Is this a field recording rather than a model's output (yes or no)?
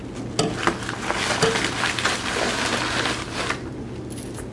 yes